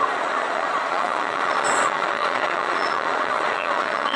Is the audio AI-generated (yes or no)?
yes